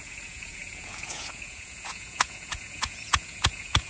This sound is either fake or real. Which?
fake